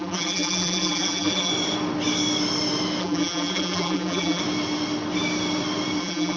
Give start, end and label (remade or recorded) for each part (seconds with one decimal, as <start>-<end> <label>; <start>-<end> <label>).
0.0-1.5 remade; 1.5-3.0 recorded; 3.0-4.4 remade; 4.4-6.0 recorded; 6.0-6.4 remade